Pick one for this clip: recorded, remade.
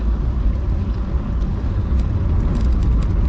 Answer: recorded